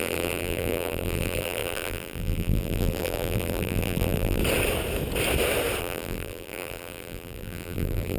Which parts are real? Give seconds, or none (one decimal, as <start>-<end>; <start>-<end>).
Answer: 4.4-5.8